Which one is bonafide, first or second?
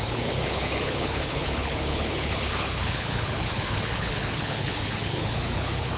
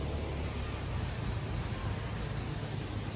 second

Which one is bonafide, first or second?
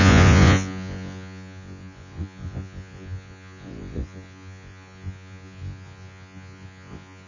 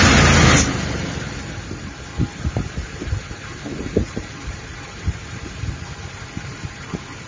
second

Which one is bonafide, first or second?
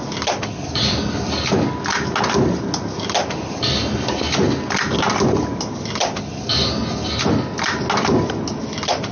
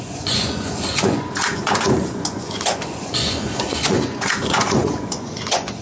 first